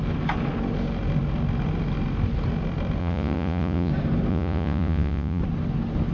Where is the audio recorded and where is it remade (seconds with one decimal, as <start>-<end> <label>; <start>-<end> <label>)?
0.0-3.0 recorded; 3.0-3.9 remade; 3.9-4.3 recorded; 4.3-5.4 remade; 5.4-6.1 recorded